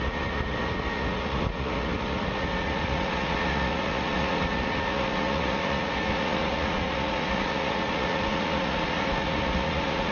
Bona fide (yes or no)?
no